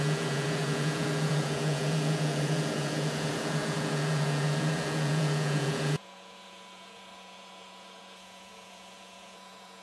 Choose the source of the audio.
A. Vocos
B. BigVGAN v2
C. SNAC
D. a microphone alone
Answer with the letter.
A